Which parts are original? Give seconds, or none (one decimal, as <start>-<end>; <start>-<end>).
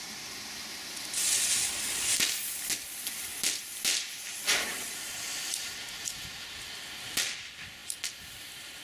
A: none